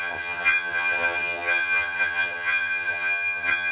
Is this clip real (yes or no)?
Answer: no